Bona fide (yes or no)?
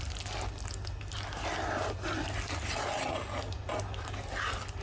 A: yes